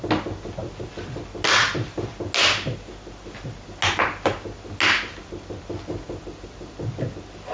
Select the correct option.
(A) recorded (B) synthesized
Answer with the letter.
A